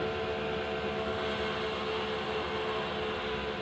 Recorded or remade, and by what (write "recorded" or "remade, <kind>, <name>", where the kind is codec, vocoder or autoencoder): recorded